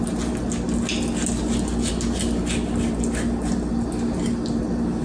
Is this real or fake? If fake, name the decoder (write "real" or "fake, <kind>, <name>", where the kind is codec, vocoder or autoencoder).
real